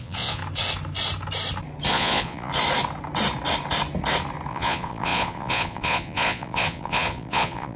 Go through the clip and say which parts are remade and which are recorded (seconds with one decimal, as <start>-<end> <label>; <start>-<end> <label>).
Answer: 0.0-0.4 remade; 0.4-1.9 recorded; 1.9-2.5 remade; 2.5-4.5 recorded; 4.5-7.8 remade